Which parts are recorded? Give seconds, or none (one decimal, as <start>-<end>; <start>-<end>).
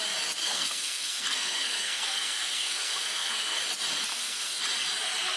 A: 0.0-0.4; 3.6-4.1; 4.6-5.4